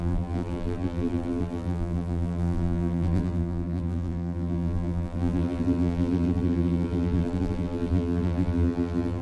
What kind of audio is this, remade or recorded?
remade